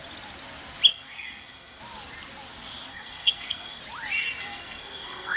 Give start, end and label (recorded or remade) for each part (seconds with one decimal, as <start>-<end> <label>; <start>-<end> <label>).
0.0-0.9 recorded; 0.9-1.8 remade; 1.8-2.9 recorded; 2.9-3.8 remade; 3.8-4.4 recorded; 4.4-5.4 remade